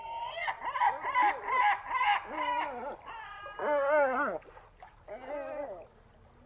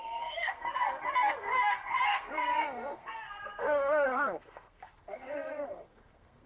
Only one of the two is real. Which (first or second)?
first